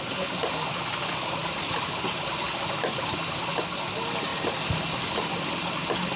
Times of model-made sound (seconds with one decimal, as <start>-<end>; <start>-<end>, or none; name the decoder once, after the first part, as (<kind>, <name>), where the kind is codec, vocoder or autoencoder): none